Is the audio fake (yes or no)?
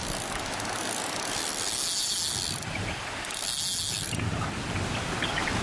no